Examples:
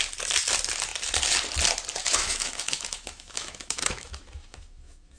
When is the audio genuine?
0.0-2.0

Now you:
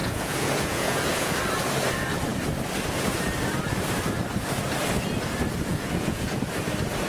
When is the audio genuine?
1.3-5.7; 6.4-7.1

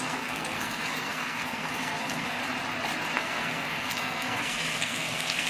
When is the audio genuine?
2.4-3.2